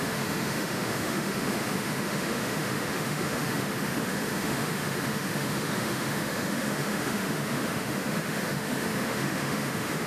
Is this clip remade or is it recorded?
remade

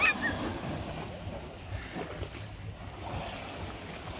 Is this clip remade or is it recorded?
recorded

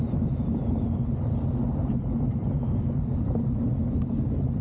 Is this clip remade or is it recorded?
recorded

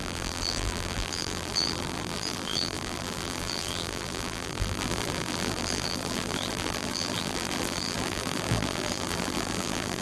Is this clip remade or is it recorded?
remade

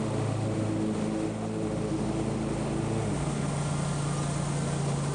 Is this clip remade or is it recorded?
recorded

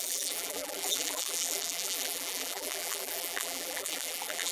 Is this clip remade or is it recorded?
remade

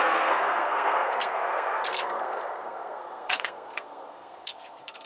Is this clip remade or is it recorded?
remade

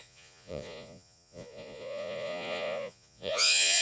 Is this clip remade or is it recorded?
remade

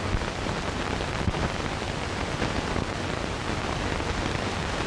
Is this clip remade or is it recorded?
recorded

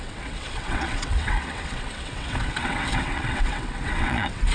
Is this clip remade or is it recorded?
remade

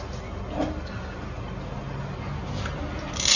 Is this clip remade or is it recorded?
recorded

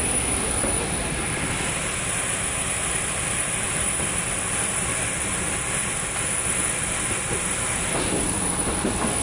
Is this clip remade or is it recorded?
recorded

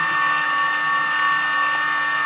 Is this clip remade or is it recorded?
recorded